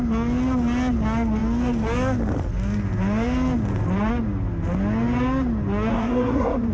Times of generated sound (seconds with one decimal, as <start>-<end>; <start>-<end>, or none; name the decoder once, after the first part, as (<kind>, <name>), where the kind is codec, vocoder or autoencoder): 5.9-6.7 (codec, SNAC)